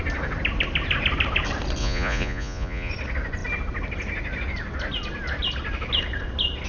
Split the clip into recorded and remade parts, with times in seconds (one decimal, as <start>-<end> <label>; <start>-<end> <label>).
0.0-1.8 recorded; 1.8-2.9 remade; 2.9-6.7 recorded